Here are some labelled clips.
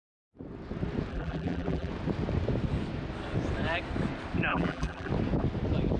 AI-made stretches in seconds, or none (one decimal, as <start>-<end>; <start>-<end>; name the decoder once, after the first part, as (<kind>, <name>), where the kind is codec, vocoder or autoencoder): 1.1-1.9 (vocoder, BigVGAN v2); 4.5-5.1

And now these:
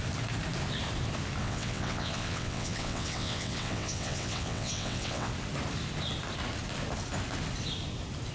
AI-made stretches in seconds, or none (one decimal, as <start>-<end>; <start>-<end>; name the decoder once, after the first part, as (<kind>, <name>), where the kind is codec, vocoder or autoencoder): 1.4-5.3 (vocoder, WaveNeXt)

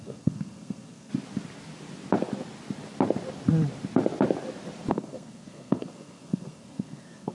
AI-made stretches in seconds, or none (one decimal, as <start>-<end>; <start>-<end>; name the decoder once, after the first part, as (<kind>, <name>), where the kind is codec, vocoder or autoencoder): 0.0-1.1 (codec, SNAC); 4.9-7.3